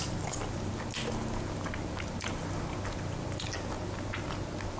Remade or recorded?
recorded